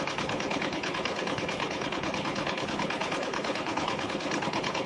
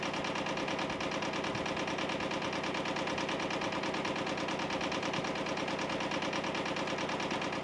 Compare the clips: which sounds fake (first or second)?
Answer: first